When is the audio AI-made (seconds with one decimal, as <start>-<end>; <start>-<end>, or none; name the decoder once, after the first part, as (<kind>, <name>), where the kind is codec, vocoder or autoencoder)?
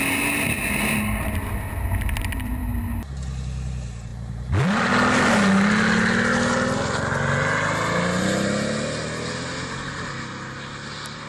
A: 4.1-4.9 (vocoder, BigVGAN v2)